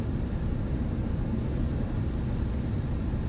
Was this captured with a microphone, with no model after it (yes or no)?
yes